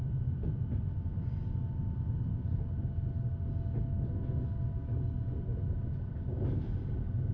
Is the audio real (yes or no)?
yes